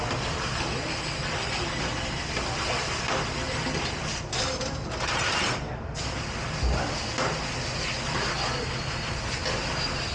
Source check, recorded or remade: recorded